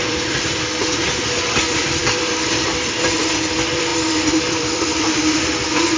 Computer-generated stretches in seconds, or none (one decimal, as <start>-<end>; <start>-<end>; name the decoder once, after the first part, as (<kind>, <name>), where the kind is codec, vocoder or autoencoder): 0.0-6.0 (vocoder, BigVGAN v2)